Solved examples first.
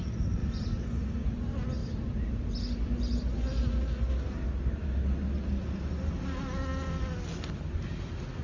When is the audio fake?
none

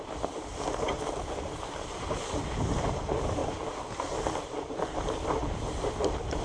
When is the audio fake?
none

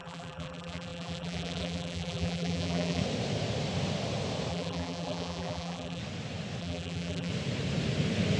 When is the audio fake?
0.0-3.0; 4.5-6.0; 6.6-7.3

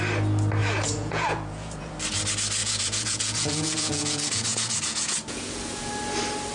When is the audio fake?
0.6-1.9; 2.6-5.9

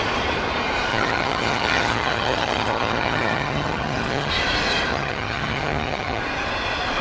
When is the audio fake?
0.9-4.3; 4.9-6.2

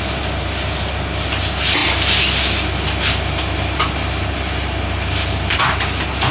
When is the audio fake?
none